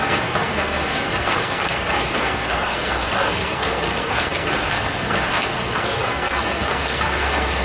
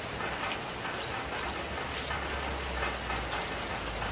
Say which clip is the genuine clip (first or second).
second